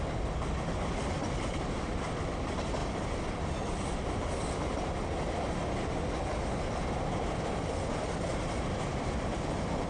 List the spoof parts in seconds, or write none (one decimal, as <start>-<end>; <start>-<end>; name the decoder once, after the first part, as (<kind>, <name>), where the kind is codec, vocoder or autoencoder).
none